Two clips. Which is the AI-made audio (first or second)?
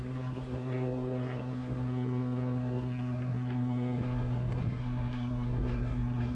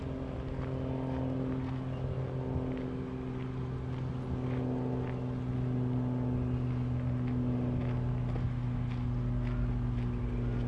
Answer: first